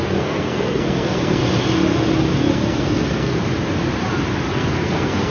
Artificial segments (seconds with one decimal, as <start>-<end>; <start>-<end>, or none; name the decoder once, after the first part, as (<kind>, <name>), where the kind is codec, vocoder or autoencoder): 0.0-1.4 (codec, SNAC); 2.4-3.4; 4.5-5.3